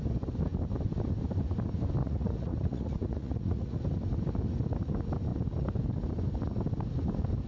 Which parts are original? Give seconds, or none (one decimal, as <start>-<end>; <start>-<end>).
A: 0.0-2.0; 3.8-7.5